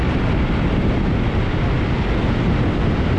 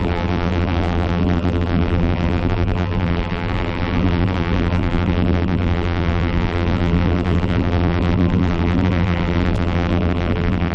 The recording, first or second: first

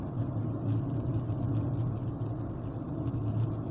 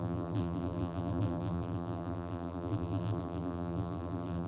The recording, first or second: first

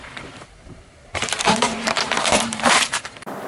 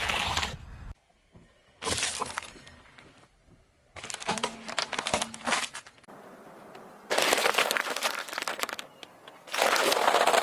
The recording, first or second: second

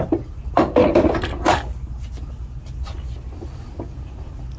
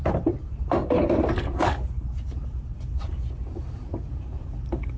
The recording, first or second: first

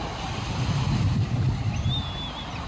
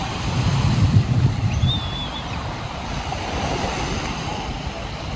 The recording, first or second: first